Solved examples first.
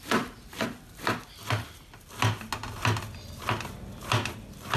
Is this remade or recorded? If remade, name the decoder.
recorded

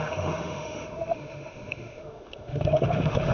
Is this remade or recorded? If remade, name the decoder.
remade, autoencoder, DAC-VAE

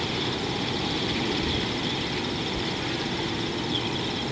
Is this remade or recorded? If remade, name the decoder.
recorded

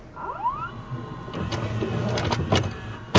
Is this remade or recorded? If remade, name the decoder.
recorded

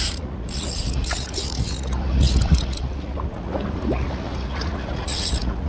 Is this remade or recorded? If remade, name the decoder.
remade, vocoder, Vocos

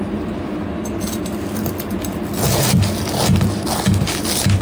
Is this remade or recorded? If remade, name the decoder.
recorded